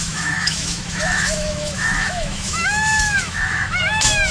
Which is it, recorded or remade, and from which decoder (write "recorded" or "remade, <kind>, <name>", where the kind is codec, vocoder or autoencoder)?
remade, autoencoder, DAC-VAE